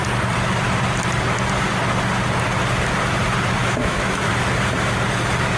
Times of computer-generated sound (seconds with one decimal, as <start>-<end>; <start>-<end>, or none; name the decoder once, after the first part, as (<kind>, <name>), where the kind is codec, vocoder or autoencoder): 3.6-4.3 (autoencoder, DAC-VAE)